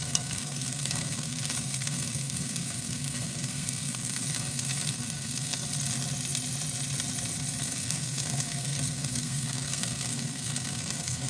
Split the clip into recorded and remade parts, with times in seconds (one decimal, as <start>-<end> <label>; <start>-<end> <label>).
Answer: 0.0-5.6 remade; 5.6-7.6 recorded; 7.6-11.3 remade